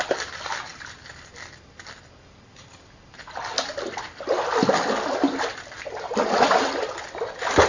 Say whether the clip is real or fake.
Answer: real